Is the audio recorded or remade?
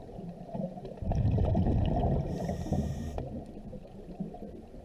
remade